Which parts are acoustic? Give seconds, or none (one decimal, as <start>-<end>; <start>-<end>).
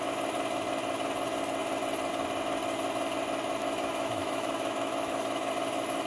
0.0-3.6; 5.5-6.1